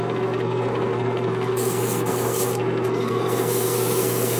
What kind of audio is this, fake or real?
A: fake